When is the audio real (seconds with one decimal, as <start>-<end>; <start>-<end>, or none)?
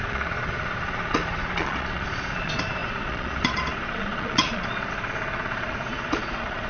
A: none